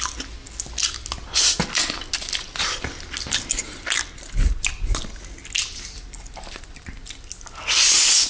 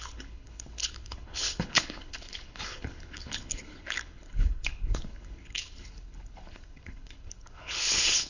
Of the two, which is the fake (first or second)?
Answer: second